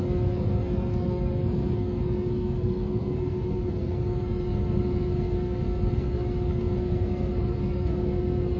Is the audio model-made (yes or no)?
yes